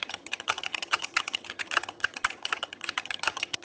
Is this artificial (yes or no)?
yes